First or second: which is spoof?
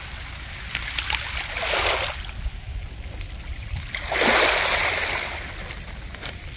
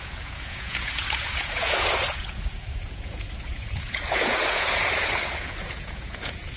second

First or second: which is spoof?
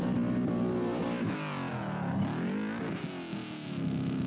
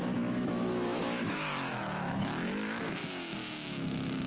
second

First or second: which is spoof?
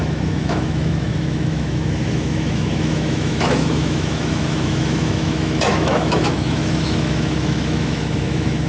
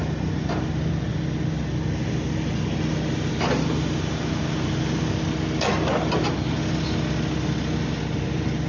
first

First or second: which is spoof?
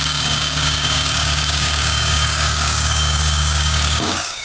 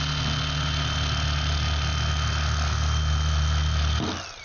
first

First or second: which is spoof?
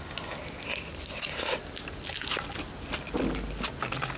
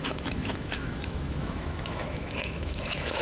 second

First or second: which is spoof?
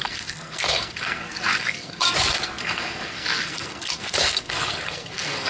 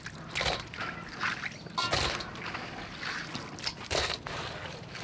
first